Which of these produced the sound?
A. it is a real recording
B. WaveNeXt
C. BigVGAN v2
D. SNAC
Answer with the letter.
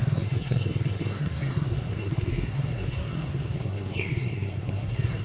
D